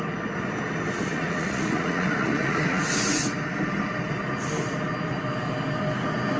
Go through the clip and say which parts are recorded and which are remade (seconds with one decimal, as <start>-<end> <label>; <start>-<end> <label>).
0.0-1.0 recorded; 1.0-2.8 remade; 2.8-6.4 recorded